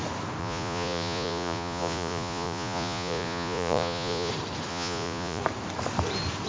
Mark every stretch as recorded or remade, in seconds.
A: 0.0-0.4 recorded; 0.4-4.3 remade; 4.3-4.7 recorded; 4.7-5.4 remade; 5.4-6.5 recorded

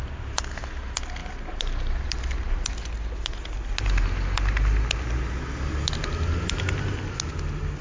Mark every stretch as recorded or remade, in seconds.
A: 0.0-7.8 recorded

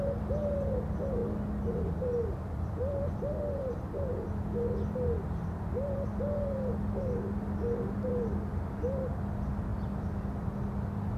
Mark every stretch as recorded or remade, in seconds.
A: 0.0-11.2 recorded

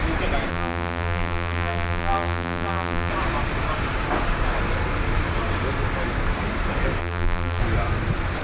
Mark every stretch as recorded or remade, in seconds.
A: 0.0-0.5 recorded; 0.5-3.1 remade; 3.1-7.0 recorded; 7.0-7.6 remade; 7.6-8.4 recorded

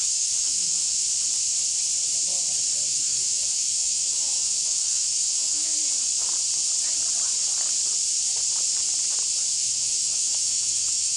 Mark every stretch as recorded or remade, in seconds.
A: 0.0-1.0 remade; 1.0-2.9 recorded; 2.9-5.8 remade; 5.8-9.6 recorded; 9.6-11.2 remade

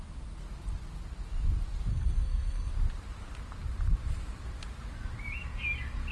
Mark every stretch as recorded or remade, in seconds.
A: 0.0-1.9 recorded; 1.9-2.7 remade; 2.7-6.1 recorded

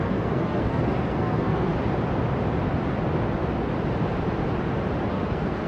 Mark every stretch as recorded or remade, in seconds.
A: 0.0-1.7 remade; 1.7-5.1 recorded; 5.1-5.7 remade

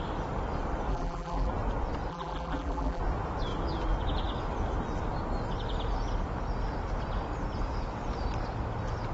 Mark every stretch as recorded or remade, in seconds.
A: 0.0-0.9 recorded; 0.9-1.5 remade; 1.5-2.1 recorded; 2.1-3.0 remade; 3.0-9.1 recorded